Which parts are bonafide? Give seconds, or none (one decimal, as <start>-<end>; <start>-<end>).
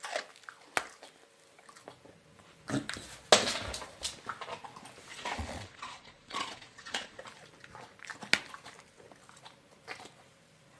0.0-5.1; 7.2-10.8